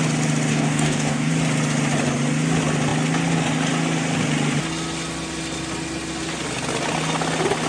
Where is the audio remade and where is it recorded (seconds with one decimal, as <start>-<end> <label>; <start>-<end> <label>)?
0.0-0.5 recorded; 0.5-1.3 remade; 1.3-7.7 recorded